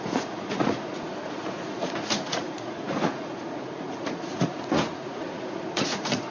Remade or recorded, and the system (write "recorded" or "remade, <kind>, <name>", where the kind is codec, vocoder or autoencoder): remade, vocoder, Vocos